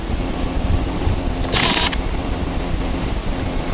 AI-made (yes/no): no